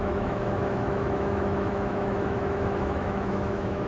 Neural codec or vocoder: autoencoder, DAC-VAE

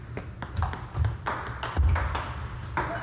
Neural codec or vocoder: none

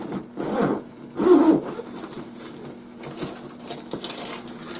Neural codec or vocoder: none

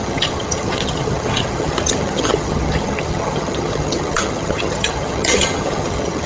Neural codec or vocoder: vocoder, HiFi-GAN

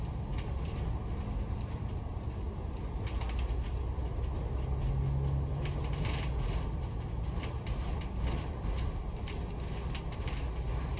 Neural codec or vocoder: none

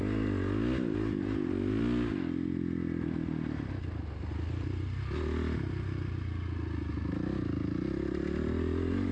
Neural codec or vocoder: none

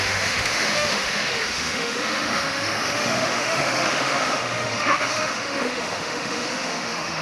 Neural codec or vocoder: autoencoder, DAC-VAE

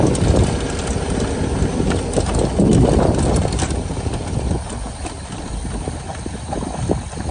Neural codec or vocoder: none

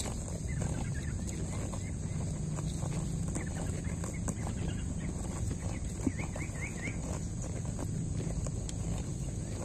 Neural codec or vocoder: none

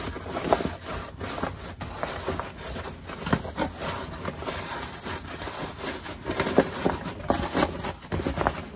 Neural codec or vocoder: none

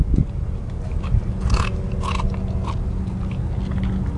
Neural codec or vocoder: none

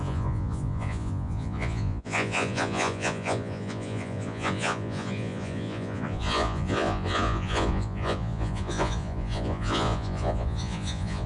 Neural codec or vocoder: vocoder, Vocos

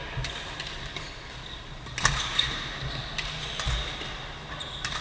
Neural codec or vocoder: none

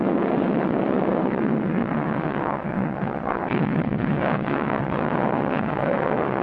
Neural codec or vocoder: vocoder, WaveNeXt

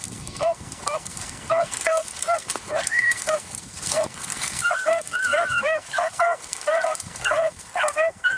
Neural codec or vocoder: codec, SNAC